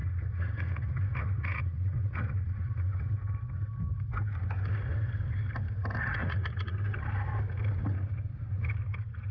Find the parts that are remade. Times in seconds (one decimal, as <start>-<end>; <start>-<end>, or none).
0.0-3.1; 6.2-6.8